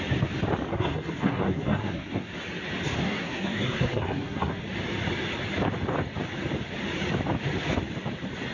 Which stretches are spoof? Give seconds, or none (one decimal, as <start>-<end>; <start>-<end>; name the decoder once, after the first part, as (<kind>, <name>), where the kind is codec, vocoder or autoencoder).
0.7-2.3 (codec, SNAC); 3.0-4.6